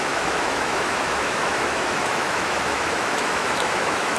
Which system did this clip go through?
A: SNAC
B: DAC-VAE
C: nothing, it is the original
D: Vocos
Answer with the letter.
B